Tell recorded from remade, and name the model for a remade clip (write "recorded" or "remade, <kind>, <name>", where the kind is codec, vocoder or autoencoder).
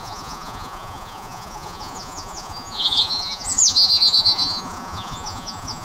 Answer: remade, vocoder, Vocos